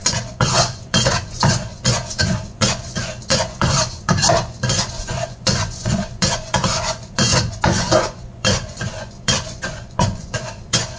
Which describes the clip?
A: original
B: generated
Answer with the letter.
B